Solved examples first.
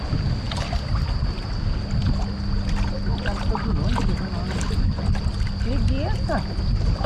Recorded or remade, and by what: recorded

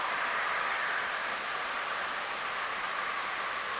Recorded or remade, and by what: remade, vocoder, BigVGAN v2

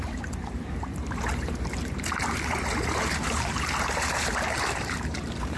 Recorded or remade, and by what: remade, vocoder, BigVGAN v2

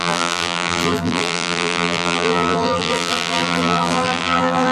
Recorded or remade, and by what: remade, vocoder, BigVGAN v2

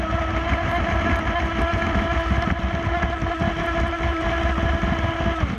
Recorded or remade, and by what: recorded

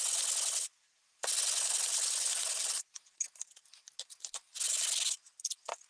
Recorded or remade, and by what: recorded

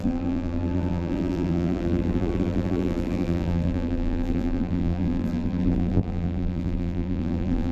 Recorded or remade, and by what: remade, vocoder, BigVGAN v2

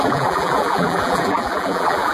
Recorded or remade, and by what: remade, vocoder, BigVGAN v2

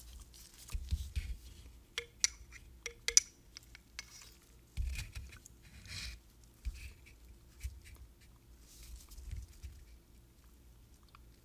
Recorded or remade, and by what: recorded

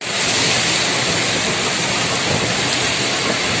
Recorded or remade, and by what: recorded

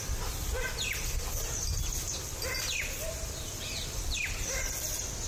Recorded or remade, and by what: recorded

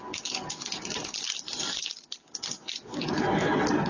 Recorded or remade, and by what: recorded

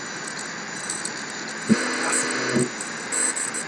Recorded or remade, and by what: recorded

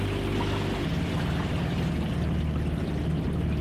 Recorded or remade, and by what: recorded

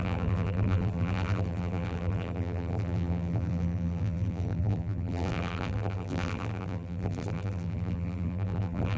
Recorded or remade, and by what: remade, vocoder, BigVGAN v2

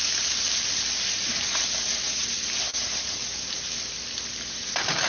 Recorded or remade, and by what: remade, vocoder, BigVGAN v2